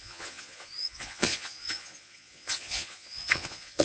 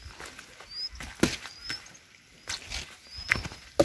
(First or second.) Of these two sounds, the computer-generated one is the first